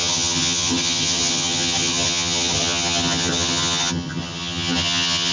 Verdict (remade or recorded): remade